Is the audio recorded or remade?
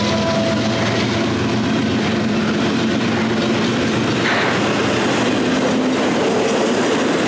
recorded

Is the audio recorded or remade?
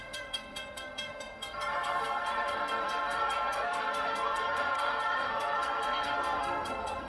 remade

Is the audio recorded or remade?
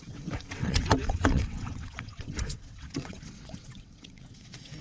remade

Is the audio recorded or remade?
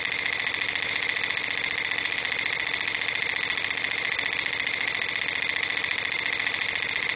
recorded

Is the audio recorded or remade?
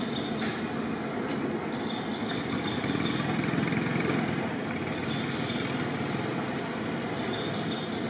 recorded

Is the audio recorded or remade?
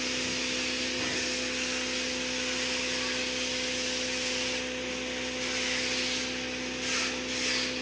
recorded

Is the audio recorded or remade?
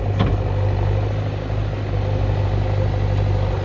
recorded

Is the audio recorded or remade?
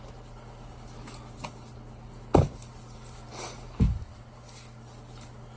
recorded